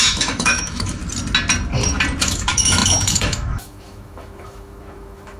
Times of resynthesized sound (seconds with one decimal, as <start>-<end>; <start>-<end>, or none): 0.0-1.0; 2.2-5.4